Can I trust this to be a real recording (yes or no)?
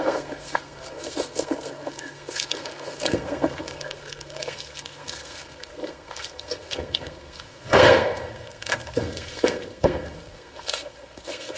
no